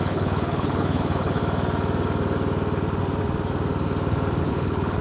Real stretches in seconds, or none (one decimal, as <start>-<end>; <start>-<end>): 1.4-4.4